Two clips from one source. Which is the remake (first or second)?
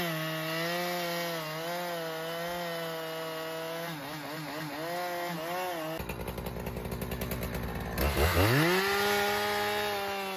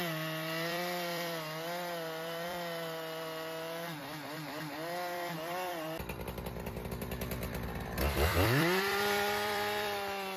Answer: second